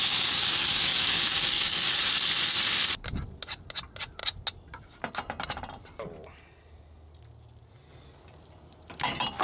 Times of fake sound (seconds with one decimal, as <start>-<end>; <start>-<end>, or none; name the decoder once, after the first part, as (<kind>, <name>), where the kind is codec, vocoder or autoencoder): 0.0-1.9 (codec, DAC)